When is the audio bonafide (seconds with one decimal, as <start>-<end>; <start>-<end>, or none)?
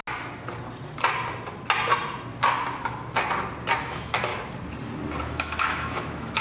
0.0-3.8; 4.3-5.2